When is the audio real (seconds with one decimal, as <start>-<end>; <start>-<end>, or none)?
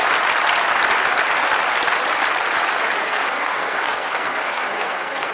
0.0-3.0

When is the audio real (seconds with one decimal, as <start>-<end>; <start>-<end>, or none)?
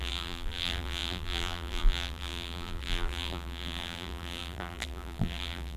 none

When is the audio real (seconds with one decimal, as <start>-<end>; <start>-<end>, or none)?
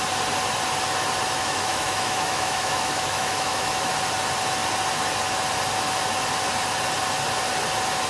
0.0-1.4; 3.9-8.1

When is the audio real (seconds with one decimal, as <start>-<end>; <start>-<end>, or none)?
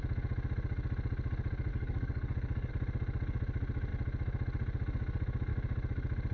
0.0-1.7; 2.7-6.3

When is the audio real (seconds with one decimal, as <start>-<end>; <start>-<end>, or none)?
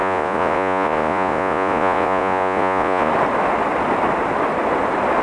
3.1-5.2